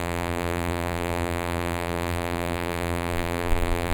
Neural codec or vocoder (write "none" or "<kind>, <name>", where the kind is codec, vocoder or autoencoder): vocoder, BigVGAN v2